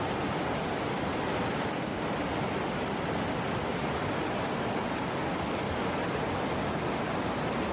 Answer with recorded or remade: recorded